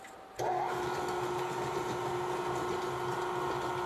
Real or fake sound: real